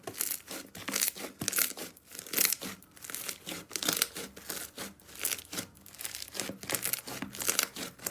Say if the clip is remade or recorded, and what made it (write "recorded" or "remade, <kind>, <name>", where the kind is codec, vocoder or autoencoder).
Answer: recorded